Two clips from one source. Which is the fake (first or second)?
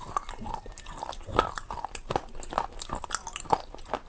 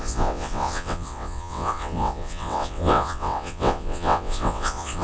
second